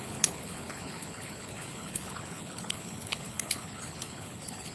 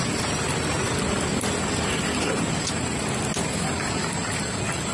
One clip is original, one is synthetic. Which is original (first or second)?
second